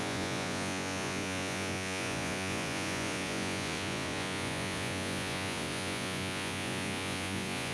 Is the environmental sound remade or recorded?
remade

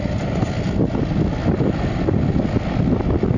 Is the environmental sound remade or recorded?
recorded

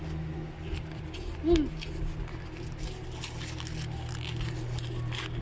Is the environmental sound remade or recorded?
recorded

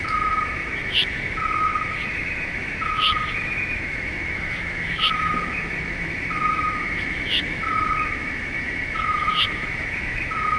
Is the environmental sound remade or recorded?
remade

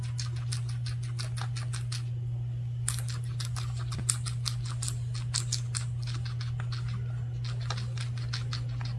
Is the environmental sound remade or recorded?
recorded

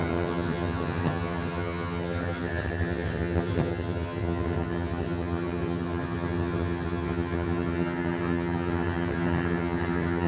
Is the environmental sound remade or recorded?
remade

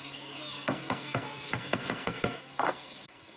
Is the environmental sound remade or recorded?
remade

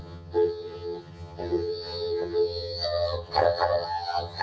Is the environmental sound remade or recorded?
remade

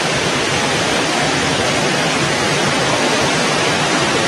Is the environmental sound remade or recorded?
remade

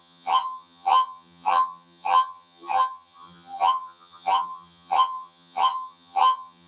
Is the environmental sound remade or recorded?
remade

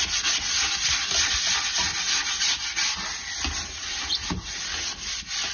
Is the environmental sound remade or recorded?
recorded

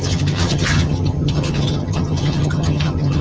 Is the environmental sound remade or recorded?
remade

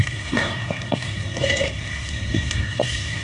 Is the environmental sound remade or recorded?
remade